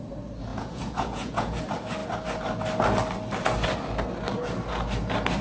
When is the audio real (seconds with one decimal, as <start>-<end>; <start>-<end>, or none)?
0.0-0.5; 1.6-5.4